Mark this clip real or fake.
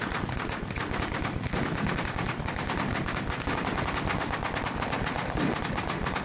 real